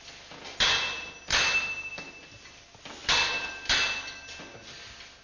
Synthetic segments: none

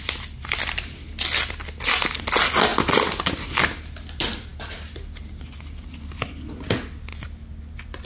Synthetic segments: none

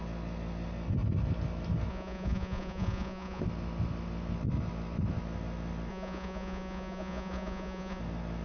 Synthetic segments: 1.9-3.4 (vocoder, Vocos); 5.9-8.0

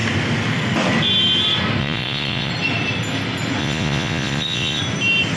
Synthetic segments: 1.8-2.5 (vocoder, Vocos); 3.6-4.8